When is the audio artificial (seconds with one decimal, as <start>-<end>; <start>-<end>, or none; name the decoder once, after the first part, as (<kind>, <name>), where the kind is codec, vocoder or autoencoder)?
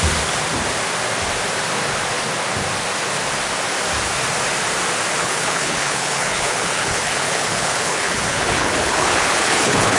5.2-10.0 (codec, HILCodec)